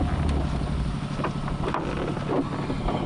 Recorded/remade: recorded